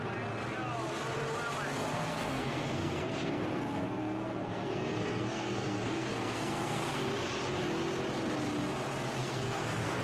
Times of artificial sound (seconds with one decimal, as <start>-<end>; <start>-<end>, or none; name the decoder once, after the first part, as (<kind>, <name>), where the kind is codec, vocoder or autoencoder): 1.9-7.1 (codec, SNAC); 9.2-10.0